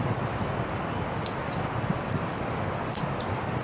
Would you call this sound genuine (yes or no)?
yes